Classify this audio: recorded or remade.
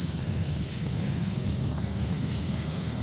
remade